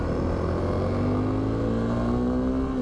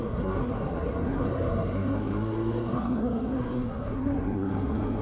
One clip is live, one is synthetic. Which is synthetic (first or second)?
second